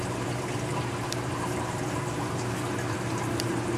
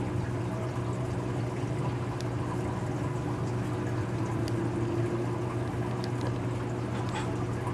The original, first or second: second